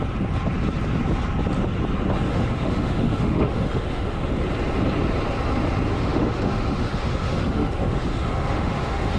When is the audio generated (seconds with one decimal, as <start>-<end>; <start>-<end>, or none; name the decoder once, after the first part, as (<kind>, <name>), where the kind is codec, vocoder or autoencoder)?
2.3-4.5 (autoencoder, DAC-VAE); 5.9-9.2